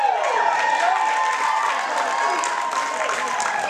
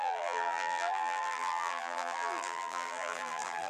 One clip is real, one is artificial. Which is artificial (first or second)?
second